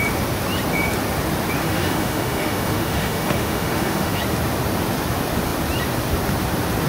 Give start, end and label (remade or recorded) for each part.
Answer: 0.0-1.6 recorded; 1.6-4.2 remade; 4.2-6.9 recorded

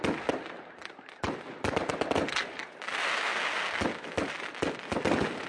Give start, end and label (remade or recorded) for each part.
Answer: 0.0-5.5 recorded

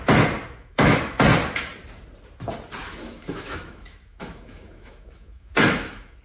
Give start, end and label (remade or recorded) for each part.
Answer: 0.0-0.6 recorded; 0.6-1.2 remade; 1.2-2.8 recorded; 2.8-6.2 remade

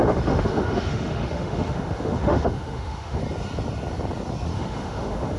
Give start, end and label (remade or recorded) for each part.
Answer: 0.0-3.2 remade; 3.2-4.5 recorded; 4.5-5.4 remade

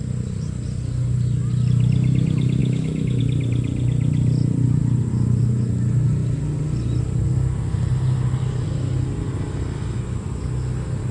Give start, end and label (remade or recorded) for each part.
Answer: 0.0-2.6 recorded; 2.6-3.2 remade; 3.2-11.1 recorded

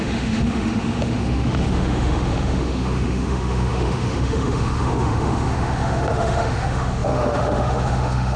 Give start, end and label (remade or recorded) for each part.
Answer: 0.0-8.4 remade